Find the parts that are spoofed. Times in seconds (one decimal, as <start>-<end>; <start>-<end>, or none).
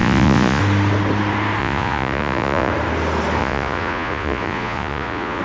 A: 0.0-0.6; 1.6-2.7; 3.4-5.4